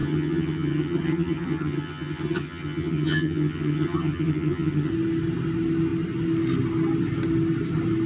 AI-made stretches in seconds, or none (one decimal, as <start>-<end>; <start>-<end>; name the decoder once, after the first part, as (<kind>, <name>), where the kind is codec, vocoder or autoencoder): 0.0-4.9 (vocoder, HiFi-GAN)